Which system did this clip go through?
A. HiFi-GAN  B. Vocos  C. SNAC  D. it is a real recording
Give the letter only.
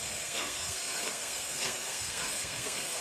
C